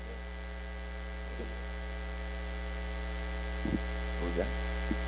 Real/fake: real